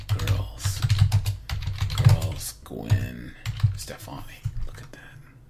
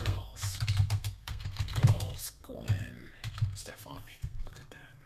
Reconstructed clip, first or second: second